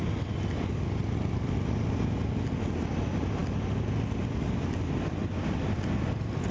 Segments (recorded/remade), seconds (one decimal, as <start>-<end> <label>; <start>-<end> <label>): 0.0-6.5 recorded